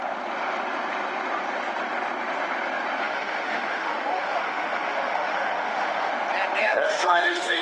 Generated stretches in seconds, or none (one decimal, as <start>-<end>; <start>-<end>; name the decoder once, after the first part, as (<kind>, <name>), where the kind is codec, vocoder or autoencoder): 3.0-6.1 (autoencoder, DAC-VAE); 6.6-7.6